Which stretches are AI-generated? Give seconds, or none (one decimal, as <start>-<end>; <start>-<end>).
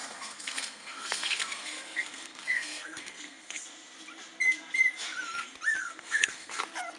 0.0-3.6; 5.8-6.6